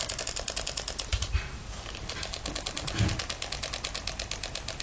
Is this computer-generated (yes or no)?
no